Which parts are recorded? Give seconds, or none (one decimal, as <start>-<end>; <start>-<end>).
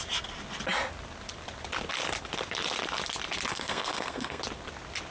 0.0-3.5; 4.4-5.1